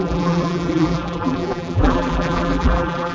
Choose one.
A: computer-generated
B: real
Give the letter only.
A